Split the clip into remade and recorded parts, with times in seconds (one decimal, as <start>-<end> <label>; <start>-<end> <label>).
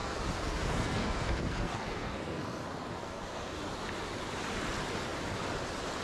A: 0.0-3.6 remade; 3.6-6.0 recorded